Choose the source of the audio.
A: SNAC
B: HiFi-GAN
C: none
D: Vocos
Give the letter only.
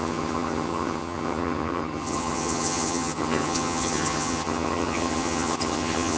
B